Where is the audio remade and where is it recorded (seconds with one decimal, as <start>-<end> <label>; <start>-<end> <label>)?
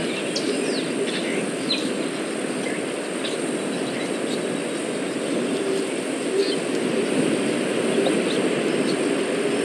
0.0-9.6 recorded